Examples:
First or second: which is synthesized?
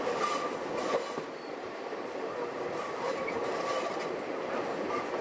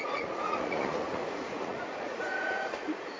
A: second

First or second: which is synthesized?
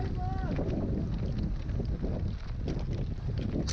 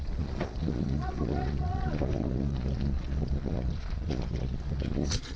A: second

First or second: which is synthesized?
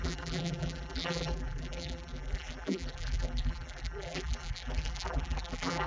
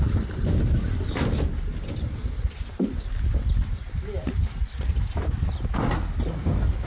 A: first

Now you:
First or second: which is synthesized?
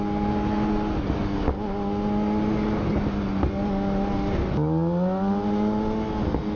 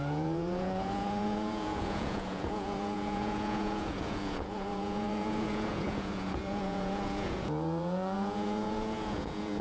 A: second